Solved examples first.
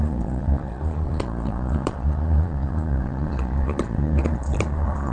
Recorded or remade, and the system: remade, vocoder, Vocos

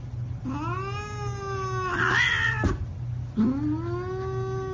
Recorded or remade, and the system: recorded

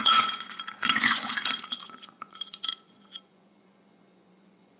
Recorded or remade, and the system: remade, vocoder, Vocos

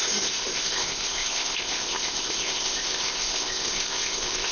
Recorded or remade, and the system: remade, codec, ZipCodec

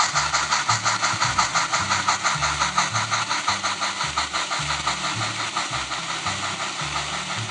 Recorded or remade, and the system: recorded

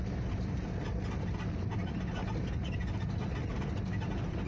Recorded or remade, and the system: recorded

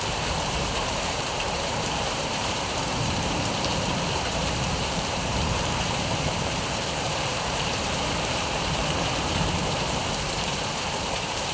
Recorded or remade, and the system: remade, vocoder, BigVGAN v2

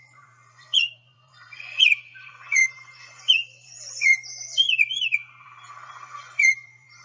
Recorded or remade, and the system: remade, vocoder, Vocos